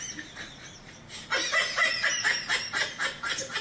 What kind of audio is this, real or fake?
fake